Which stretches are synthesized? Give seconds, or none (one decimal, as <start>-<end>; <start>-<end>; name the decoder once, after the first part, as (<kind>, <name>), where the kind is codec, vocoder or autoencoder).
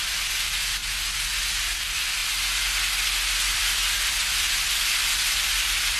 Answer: 0.0-0.8 (vocoder, BigVGAN v2); 1.5-2.2; 3.5-6.0